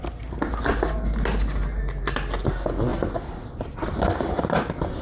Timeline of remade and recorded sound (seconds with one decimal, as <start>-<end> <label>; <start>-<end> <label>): 0.0-2.9 recorded; 2.9-5.0 remade